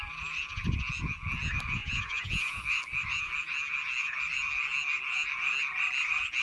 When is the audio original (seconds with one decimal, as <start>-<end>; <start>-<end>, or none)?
0.0-1.8; 2.6-6.4